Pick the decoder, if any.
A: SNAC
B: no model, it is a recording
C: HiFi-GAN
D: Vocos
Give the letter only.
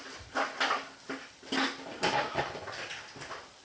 B